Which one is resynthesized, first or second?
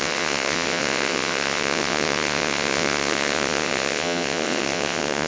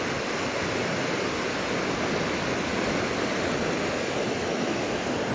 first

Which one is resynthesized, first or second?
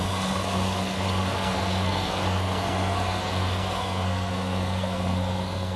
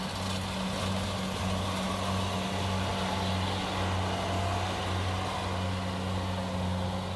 first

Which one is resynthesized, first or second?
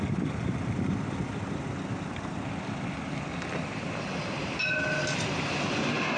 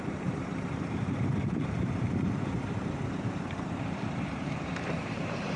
second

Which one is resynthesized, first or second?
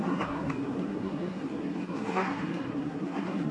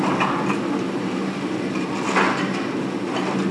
first